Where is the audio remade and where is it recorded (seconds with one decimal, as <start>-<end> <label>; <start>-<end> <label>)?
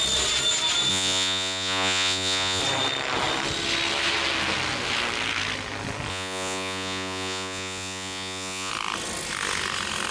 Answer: 0.0-0.9 recorded; 0.9-2.6 remade; 2.6-6.1 recorded; 6.1-8.7 remade; 8.7-10.1 recorded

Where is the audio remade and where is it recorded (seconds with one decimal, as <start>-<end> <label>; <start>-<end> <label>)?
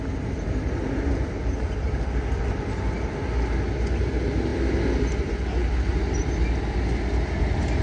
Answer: 0.0-7.8 recorded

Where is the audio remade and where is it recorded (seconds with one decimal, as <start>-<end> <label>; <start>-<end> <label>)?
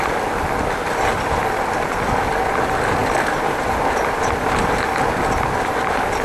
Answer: 0.0-6.2 recorded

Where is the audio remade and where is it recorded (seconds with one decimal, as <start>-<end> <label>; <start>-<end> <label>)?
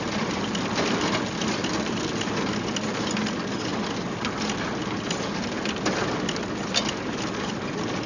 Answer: 0.0-8.1 recorded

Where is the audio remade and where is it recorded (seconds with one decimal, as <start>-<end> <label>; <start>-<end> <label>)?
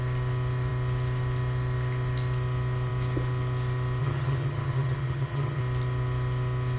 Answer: 0.0-4.0 recorded; 4.0-5.6 remade; 5.6-6.8 recorded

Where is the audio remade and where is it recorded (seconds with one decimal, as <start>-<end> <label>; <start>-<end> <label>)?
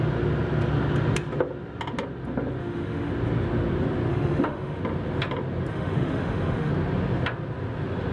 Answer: 0.0-2.6 recorded; 2.6-3.1 remade; 3.1-4.1 recorded; 4.1-4.8 remade; 4.8-5.7 recorded; 5.7-6.7 remade; 6.7-8.1 recorded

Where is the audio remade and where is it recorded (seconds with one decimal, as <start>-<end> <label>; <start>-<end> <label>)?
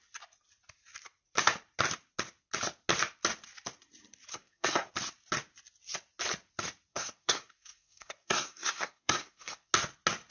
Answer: 0.0-4.3 recorded; 4.3-4.9 remade; 4.9-6.9 recorded; 6.9-9.7 remade; 9.7-10.3 recorded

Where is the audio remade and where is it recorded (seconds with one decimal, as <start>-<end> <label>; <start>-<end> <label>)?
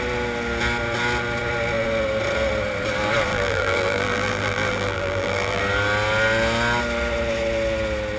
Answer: 0.0-3.3 recorded; 3.3-5.6 remade; 5.6-8.2 recorded